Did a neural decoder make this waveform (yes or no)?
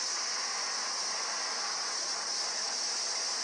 no